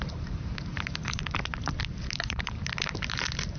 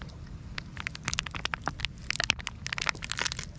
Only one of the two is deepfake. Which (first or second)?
first